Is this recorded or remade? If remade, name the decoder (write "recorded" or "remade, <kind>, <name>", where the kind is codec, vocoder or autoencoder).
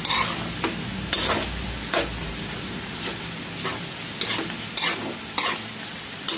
recorded